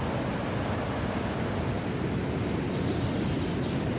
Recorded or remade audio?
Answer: recorded